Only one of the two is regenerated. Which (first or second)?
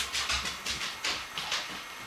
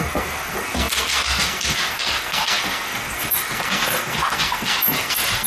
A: second